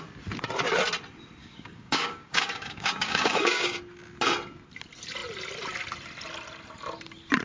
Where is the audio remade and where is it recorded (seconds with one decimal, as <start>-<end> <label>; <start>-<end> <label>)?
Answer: 0.0-1.4 recorded; 1.4-3.8 remade; 3.8-7.4 recorded